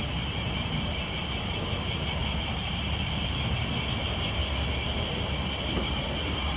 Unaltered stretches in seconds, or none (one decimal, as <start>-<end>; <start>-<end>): 0.0-2.2; 3.5-6.6